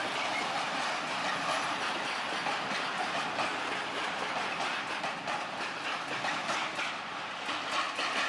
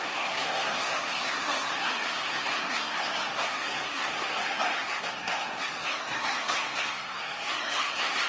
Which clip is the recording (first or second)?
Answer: first